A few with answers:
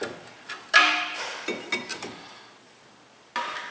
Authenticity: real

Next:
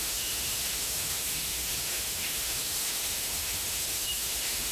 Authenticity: fake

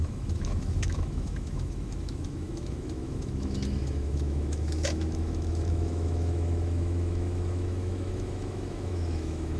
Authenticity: fake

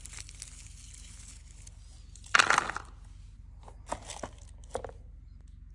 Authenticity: real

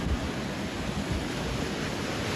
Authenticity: real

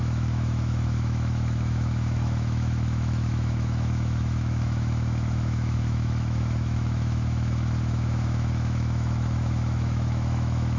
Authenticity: fake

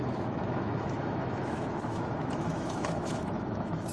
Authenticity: fake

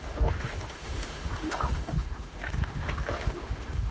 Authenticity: fake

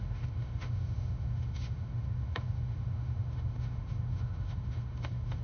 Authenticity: fake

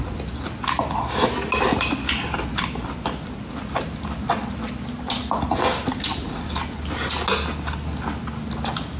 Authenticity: real